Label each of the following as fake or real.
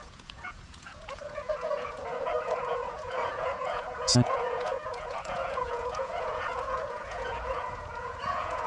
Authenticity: fake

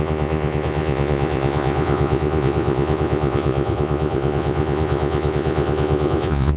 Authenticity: fake